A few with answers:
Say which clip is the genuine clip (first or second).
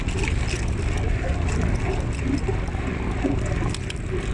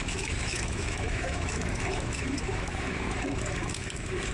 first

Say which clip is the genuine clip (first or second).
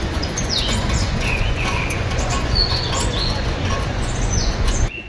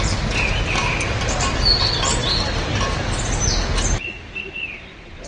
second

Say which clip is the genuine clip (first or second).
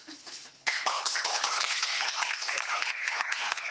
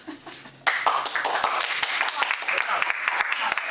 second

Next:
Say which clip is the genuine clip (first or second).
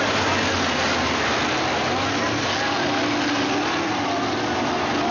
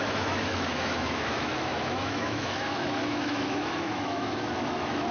first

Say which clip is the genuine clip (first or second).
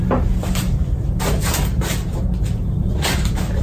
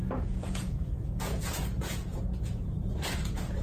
first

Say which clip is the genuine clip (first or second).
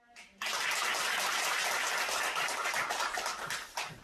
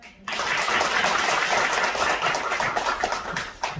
first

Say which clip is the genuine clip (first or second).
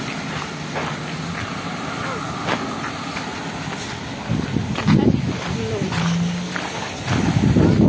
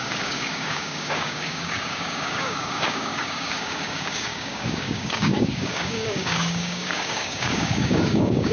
first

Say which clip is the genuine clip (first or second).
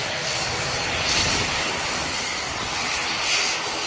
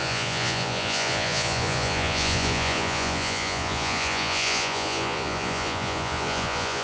first